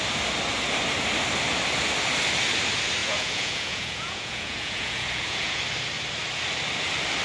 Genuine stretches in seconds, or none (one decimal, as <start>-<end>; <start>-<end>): 0.0-3.0; 5.6-7.2